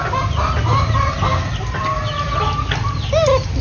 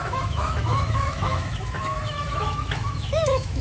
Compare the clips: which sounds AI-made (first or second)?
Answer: second